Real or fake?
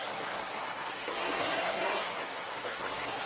fake